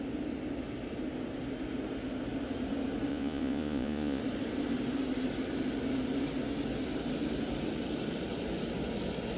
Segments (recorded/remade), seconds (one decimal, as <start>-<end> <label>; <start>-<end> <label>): 0.0-3.1 recorded; 3.1-4.2 remade; 4.2-9.4 recorded